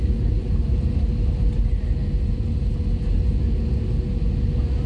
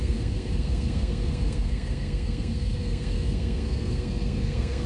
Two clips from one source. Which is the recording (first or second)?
first